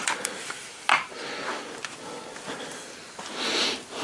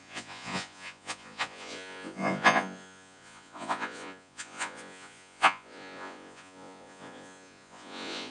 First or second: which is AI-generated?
second